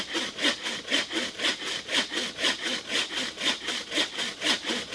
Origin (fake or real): real